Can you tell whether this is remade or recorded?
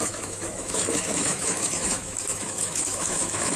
remade